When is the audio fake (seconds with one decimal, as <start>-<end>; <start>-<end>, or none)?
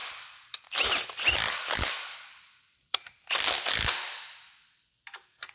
0.0-3.3